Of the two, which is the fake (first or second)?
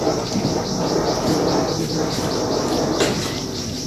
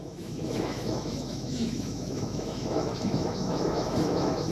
second